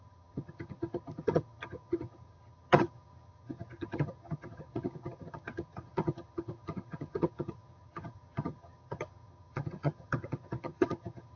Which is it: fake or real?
fake